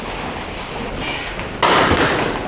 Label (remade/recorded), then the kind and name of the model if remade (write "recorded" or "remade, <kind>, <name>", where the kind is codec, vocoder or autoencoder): recorded